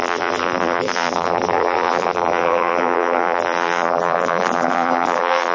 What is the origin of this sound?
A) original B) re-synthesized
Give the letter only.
B